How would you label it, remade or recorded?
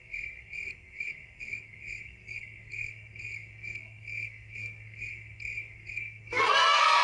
remade